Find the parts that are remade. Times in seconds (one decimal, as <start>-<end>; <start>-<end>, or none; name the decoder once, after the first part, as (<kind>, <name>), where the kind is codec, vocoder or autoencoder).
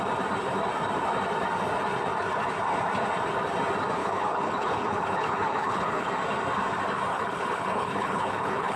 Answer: 4.0-6.1 (codec, HILCodec); 7.1-8.8